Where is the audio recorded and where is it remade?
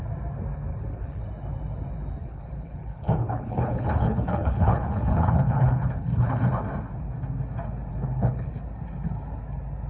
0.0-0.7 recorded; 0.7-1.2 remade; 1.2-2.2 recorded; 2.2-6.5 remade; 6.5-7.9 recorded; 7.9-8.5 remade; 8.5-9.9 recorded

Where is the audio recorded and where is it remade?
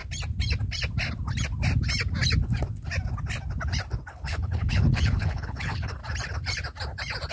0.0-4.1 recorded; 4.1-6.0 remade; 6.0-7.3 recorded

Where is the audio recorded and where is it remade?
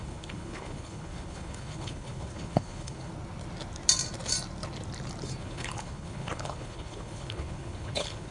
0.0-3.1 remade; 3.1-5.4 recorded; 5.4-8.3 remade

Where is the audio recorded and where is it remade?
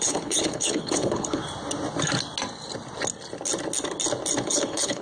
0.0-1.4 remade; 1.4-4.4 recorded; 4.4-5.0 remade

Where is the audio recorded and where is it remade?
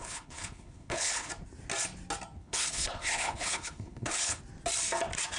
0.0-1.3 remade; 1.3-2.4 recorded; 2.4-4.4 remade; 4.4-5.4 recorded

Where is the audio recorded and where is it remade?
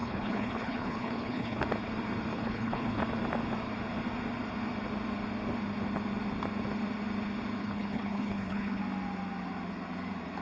0.0-1.6 remade; 1.6-2.3 recorded; 2.3-3.0 remade; 3.0-7.6 recorded; 7.6-8.8 remade; 8.8-10.4 recorded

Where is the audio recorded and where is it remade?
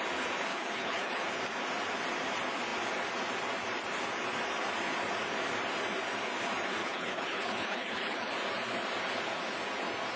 0.0-0.5 recorded; 0.5-1.3 remade; 1.3-6.8 recorded; 6.8-8.3 remade; 8.3-10.2 recorded